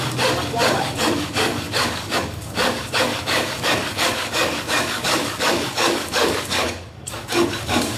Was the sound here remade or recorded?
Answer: remade